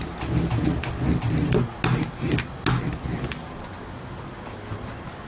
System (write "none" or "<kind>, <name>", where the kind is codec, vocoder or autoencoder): none